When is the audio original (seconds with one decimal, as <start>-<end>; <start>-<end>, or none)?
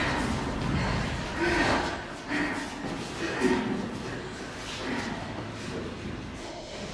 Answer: 0.0-6.4